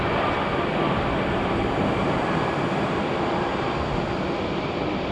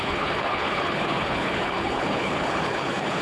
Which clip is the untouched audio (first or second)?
first